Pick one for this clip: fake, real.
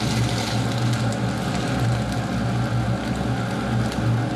real